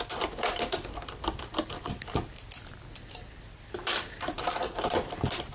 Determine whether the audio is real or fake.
fake